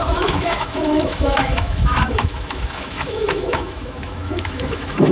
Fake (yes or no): yes